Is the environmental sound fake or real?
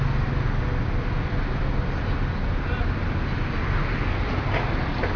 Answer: real